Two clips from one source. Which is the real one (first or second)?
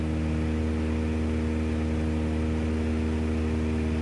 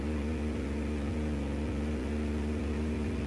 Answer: first